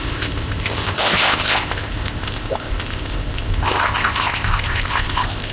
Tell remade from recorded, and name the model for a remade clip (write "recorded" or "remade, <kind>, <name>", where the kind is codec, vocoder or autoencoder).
remade, codec, ZipCodec